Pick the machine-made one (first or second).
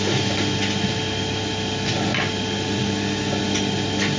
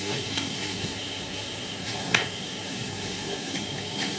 second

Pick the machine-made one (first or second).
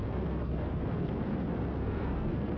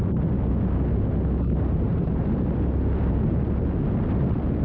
first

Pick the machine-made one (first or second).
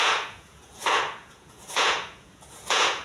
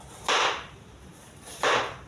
first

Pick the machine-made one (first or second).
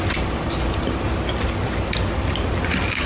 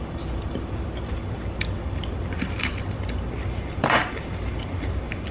second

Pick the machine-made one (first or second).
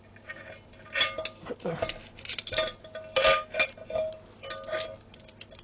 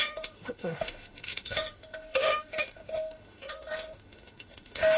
second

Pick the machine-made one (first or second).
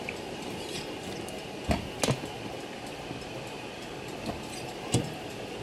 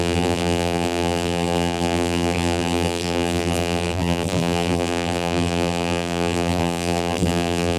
second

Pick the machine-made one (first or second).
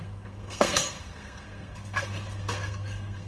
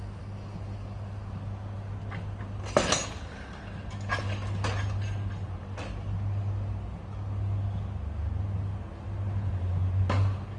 first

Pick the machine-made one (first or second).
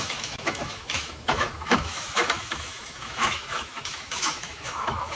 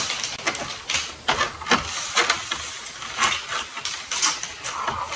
first